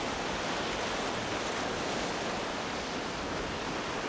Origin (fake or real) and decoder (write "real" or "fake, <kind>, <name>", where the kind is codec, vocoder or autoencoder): real